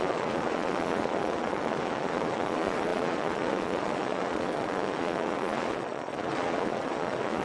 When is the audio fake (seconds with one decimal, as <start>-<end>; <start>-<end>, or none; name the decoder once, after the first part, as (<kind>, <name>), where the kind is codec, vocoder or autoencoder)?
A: 0.0-7.4 (vocoder, Vocos)

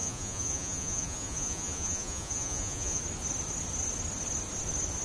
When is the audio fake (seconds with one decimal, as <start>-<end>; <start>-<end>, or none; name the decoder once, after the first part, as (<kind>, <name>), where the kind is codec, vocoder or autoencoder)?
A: 0.0-3.0 (vocoder, Vocos)